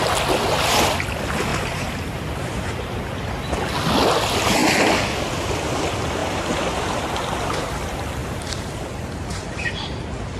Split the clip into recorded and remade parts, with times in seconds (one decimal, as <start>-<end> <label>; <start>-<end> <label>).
0.0-1.5 recorded; 1.5-2.5 remade; 2.5-6.2 recorded; 6.2-7.1 remade; 7.1-8.2 recorded; 8.2-10.4 remade